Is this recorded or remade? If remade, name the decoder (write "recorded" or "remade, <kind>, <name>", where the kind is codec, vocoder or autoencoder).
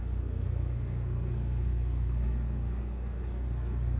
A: remade, codec, SNAC